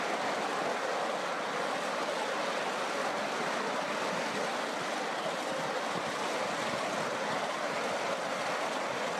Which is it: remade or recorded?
recorded